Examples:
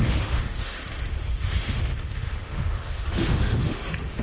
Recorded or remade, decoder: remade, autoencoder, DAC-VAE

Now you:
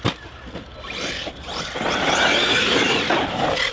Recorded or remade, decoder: recorded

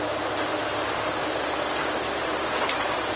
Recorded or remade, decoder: recorded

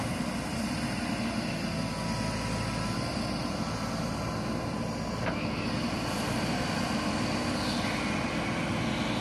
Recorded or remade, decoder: recorded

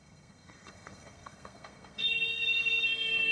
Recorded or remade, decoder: remade, codec, SNAC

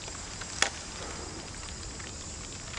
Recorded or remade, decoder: recorded